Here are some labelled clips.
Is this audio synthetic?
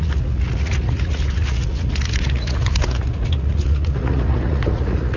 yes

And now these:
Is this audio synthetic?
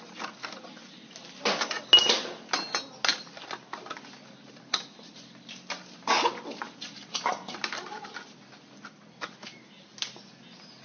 no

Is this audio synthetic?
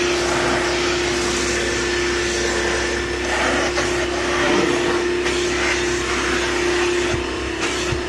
no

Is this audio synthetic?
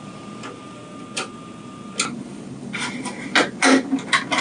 no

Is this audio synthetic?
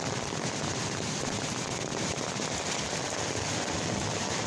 no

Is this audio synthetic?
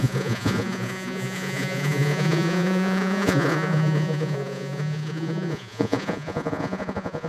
yes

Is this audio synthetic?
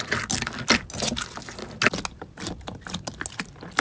no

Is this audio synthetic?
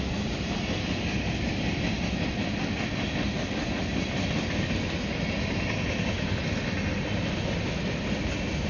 no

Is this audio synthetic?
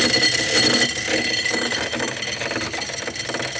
no